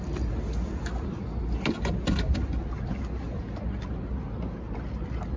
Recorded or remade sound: recorded